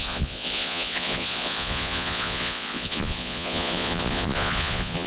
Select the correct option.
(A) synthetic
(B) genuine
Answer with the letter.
A